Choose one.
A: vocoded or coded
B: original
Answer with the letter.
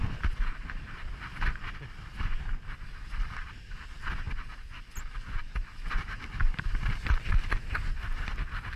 B